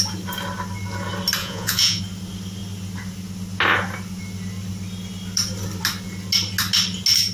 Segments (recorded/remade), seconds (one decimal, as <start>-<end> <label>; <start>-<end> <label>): 0.0-1.4 recorded; 1.4-2.0 remade; 2.0-7.3 recorded